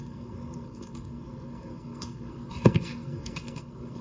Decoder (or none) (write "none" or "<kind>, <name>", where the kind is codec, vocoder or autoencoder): codec, SNAC